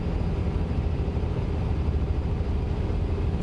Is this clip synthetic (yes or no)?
no